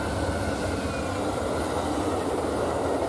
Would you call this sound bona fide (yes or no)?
yes